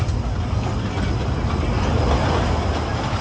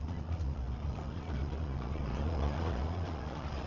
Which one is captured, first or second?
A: first